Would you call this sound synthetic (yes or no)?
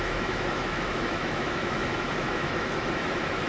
yes